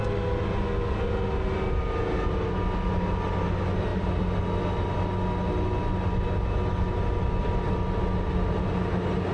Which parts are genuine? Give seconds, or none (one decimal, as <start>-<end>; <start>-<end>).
0.0-9.3